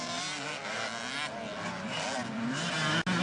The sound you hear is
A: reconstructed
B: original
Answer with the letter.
B